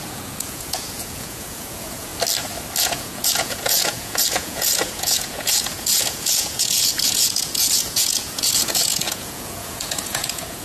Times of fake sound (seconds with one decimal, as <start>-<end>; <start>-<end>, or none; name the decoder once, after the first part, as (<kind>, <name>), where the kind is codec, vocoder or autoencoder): 0.0-2.1 (vocoder, Vocos); 2.8-10.6